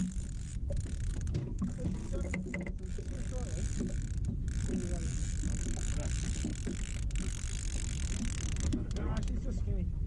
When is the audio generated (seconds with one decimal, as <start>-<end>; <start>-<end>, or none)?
0.5-1.1

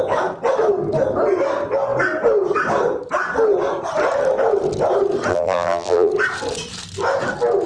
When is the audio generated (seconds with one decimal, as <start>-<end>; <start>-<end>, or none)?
5.3-6.1

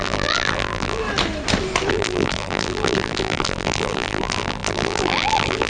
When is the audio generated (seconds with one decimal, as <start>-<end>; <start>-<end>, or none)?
0.0-1.0; 1.9-5.7

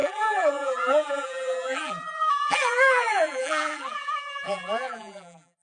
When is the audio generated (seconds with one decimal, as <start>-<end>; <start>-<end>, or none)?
0.0-5.6

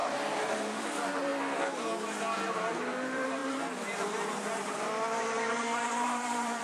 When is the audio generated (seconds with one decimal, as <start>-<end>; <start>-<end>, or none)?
0.0-1.3; 2.5-6.6

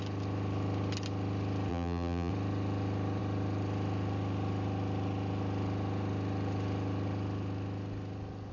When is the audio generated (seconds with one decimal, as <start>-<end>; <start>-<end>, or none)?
1.7-2.3

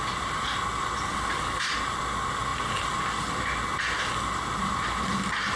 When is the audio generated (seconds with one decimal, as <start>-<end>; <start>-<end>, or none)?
0.0-5.6

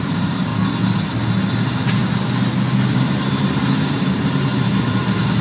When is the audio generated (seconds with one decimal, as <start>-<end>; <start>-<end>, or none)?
0.0-0.5; 1.5-2.0; 2.9-5.4